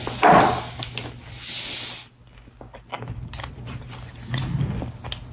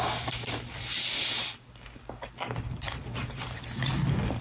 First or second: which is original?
first